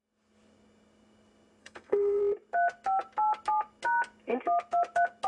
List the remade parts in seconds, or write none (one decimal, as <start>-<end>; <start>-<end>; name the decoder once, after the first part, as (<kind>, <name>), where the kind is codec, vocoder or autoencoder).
1.6-2.2 (codec, SNAC)